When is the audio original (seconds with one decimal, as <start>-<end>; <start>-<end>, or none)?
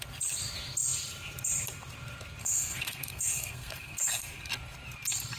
0.0-2.4; 4.5-5.4